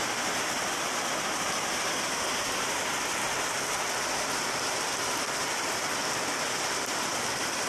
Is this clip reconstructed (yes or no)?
no